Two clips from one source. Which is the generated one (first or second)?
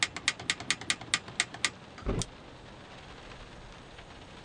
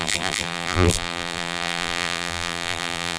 second